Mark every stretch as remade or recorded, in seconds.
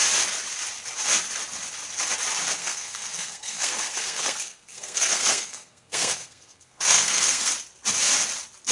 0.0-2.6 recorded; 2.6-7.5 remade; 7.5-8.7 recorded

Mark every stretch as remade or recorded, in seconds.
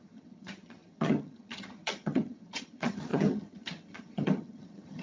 0.0-5.0 remade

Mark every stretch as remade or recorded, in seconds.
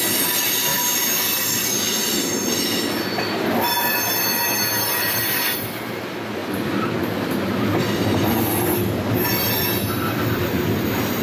0.0-11.2 recorded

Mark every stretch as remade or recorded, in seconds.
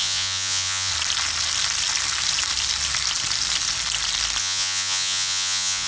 0.0-0.9 remade; 0.9-4.4 recorded; 4.4-5.9 remade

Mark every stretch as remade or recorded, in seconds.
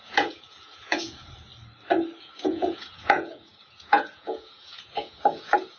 0.0-1.5 remade; 1.5-2.2 recorded; 2.2-5.8 remade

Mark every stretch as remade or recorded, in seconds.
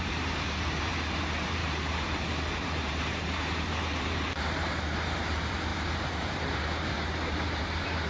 0.0-8.1 remade